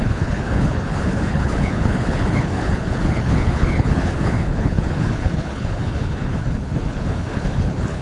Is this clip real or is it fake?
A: fake